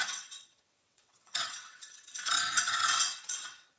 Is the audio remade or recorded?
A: remade